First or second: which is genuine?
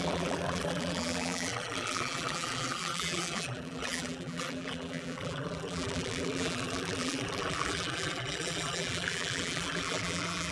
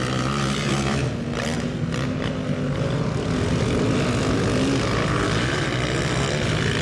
second